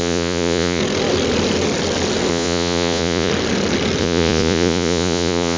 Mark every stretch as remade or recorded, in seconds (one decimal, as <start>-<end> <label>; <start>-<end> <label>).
0.0-0.8 remade; 0.8-2.3 recorded; 2.3-3.3 remade; 3.3-4.0 recorded; 4.0-5.6 remade